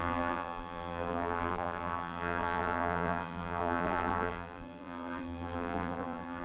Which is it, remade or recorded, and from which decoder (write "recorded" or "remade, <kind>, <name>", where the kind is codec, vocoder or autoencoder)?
remade, vocoder, BigVGAN v2